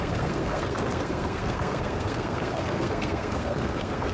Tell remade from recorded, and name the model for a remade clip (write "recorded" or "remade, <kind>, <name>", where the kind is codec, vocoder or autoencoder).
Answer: remade, codec, SNAC